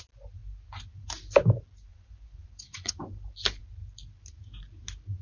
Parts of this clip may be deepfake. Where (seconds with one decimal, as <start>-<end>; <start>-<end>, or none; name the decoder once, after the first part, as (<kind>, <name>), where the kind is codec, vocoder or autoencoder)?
1.9-2.9 (vocoder, Vocos)